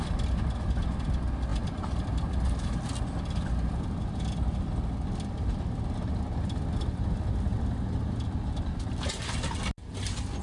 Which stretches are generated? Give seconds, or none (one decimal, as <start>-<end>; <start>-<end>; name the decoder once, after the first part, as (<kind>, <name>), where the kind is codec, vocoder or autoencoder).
none